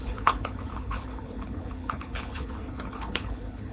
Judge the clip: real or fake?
fake